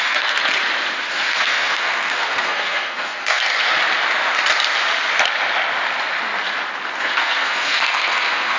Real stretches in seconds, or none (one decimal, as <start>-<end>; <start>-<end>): 0.4-1.1; 3.5-7.0